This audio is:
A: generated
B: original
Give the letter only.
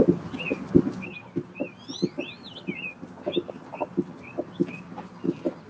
B